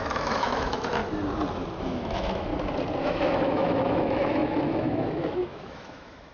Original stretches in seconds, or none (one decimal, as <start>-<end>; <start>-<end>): 1.0-1.8; 2.5-3.0